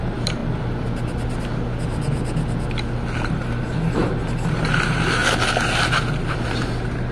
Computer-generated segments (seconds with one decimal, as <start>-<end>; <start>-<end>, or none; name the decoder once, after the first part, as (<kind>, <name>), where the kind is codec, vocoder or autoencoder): 0.0-0.4 (vocoder, BigVGAN v2); 3.3-5.2; 6.2-7.1